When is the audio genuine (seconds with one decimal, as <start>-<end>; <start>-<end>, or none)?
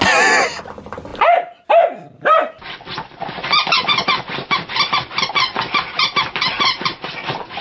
0.0-7.6